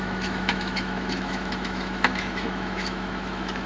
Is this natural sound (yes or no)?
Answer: no